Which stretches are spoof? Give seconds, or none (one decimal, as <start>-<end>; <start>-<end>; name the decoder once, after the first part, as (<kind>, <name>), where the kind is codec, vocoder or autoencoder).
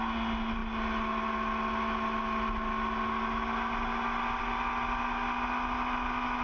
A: none